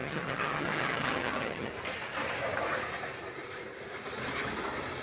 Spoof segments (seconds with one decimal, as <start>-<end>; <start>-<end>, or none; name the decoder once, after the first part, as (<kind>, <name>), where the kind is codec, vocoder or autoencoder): 0.0-1.7 (vocoder, HiFi-GAN)

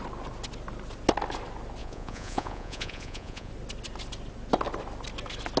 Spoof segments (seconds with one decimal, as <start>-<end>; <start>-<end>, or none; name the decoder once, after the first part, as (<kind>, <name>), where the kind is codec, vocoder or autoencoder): 1.8-3.5 (vocoder, Vocos)

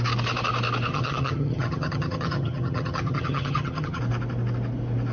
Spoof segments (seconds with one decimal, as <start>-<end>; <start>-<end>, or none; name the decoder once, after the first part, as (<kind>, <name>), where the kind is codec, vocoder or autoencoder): 0.9-4.0 (vocoder, HiFi-GAN)

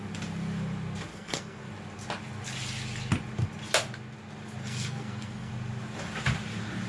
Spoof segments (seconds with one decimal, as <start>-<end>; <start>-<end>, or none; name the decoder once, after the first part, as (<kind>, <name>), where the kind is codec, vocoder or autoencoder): 1.1-1.7 (codec, SNAC); 4.6-5.5

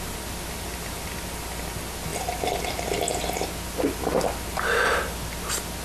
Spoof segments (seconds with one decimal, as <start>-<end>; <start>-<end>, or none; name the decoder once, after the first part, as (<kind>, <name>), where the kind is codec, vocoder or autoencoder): none

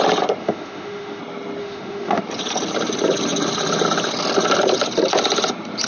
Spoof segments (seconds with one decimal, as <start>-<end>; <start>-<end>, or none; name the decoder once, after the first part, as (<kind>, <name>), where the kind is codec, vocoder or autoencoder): 0.4-1.2 (autoencoder, DAC-VAE); 1.6-2.2

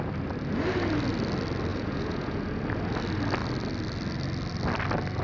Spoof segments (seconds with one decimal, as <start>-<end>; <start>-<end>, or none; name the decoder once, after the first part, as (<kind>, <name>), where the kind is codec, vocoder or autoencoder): 1.7-2.4 (vocoder, Vocos)